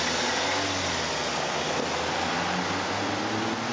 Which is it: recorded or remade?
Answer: recorded